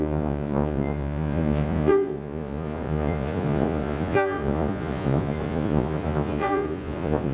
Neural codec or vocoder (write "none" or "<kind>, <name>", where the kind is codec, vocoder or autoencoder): vocoder, Vocos